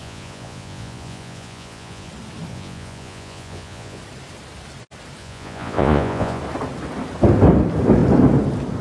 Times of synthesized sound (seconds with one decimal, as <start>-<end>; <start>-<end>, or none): 0.0-2.1; 2.5-4.0; 5.2-6.4